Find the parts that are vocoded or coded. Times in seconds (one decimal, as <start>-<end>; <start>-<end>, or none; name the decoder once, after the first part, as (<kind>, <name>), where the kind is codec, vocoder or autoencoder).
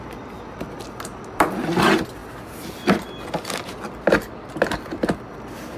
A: none